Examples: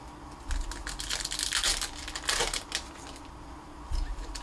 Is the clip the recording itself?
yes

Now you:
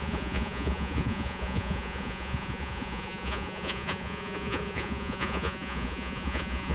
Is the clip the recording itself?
no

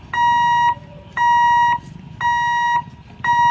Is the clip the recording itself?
yes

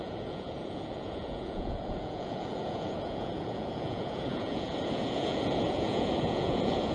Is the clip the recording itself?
no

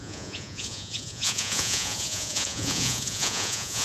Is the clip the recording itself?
no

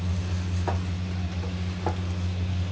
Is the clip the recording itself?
yes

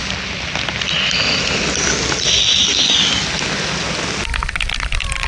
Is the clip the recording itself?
yes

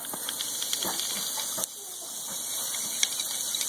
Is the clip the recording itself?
yes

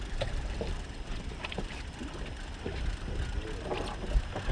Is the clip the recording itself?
yes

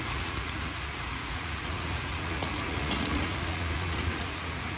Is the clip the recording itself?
no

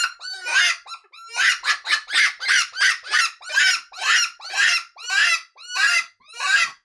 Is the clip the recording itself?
yes